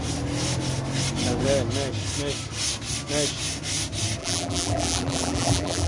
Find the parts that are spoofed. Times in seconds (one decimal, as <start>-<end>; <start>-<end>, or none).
4.2-5.9